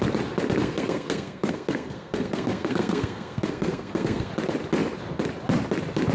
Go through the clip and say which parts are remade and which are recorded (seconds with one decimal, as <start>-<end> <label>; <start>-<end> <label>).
0.0-0.6 recorded; 0.6-4.3 remade; 4.3-6.1 recorded